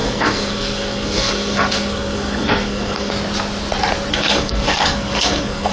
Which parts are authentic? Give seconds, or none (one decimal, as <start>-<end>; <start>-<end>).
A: 3.1-4.1